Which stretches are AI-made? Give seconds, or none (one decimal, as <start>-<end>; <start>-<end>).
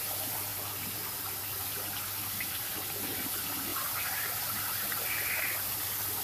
3.7-4.6